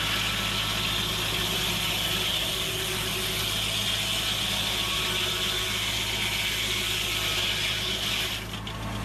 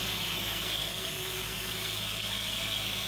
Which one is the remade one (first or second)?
second